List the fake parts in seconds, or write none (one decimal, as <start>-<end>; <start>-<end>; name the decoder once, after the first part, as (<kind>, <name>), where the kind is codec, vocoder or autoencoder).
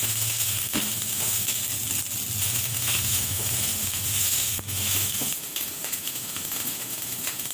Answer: 0.0-1.6 (autoencoder, DAC-VAE); 2.4-7.5